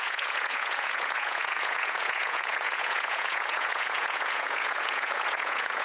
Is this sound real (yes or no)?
no